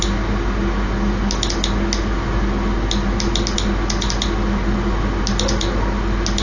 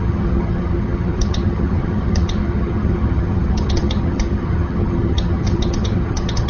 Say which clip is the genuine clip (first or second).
first